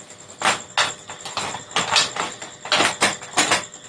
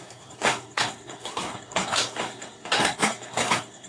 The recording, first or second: first